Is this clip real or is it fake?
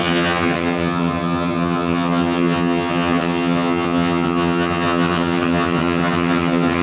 fake